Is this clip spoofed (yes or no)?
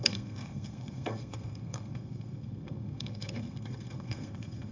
yes